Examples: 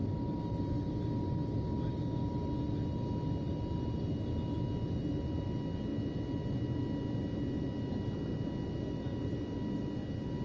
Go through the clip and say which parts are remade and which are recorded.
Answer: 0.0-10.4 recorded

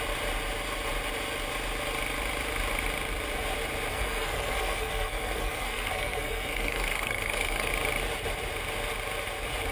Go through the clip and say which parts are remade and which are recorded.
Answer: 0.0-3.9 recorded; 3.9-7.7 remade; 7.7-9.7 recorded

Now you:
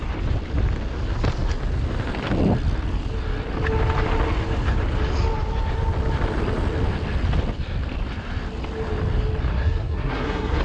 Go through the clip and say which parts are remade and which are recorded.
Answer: 0.0-9.5 recorded; 9.5-10.6 remade

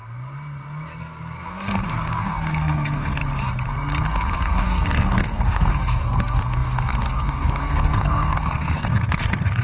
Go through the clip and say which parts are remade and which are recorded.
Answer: 0.0-1.0 recorded; 1.0-3.2 remade; 3.2-4.1 recorded; 4.1-9.6 remade